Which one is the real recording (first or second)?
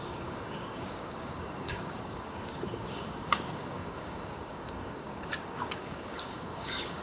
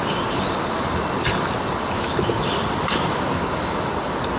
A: second